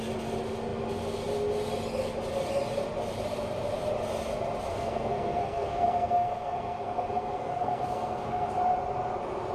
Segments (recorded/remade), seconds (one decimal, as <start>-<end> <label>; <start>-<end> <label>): 0.0-4.7 recorded; 4.7-8.5 remade; 8.5-9.5 recorded